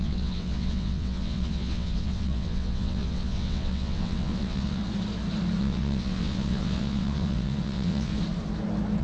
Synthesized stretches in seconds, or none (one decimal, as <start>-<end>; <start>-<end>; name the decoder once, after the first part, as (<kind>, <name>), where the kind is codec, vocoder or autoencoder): 0.0-4.8 (vocoder, WaveNeXt); 5.6-8.1